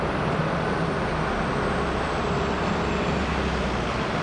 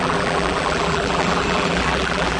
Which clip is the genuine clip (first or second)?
first